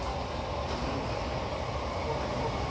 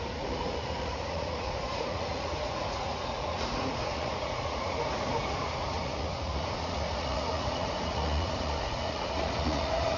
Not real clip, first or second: second